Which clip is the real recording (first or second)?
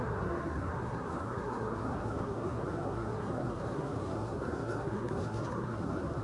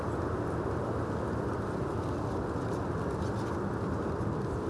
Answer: second